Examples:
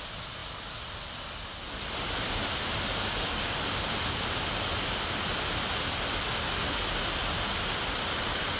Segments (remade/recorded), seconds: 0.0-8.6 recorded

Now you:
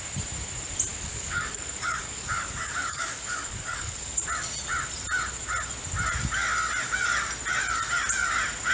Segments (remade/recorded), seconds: 0.0-0.9 recorded; 0.9-4.2 remade; 4.2-8.7 recorded

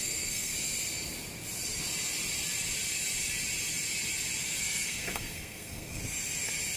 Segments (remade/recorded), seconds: 0.0-0.5 remade; 0.5-4.6 recorded; 4.6-6.0 remade; 6.0-6.8 recorded

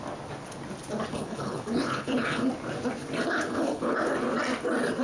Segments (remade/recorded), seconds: 0.0-1.1 recorded; 1.1-2.5 remade; 2.5-3.3 recorded; 3.3-4.0 remade; 4.0-5.0 recorded

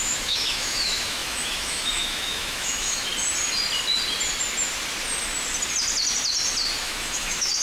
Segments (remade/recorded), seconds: 0.0-3.1 remade; 3.1-6.8 recorded; 6.8-7.6 remade

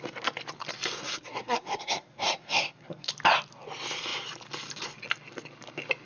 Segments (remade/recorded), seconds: 0.0-1.0 recorded; 1.0-3.1 remade; 3.1-6.0 recorded